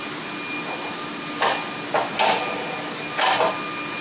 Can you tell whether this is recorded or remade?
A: recorded